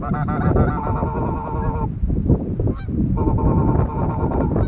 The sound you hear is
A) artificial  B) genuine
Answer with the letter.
B